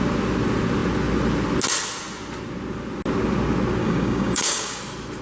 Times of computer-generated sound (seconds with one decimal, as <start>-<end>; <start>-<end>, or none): 3.8-4.8